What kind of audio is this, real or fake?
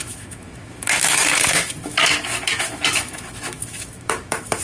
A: fake